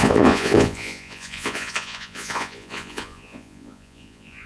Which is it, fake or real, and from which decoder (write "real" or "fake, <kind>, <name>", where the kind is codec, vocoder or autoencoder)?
fake, vocoder, Vocos